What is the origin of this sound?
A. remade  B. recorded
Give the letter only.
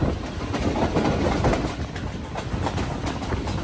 B